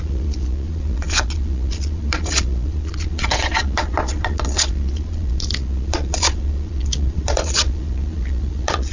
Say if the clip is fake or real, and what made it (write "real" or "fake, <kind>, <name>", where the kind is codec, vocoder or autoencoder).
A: fake, vocoder, Vocos